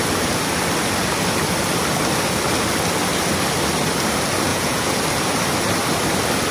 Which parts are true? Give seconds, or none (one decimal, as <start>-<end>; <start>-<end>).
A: 0.0-4.5; 5.0-6.5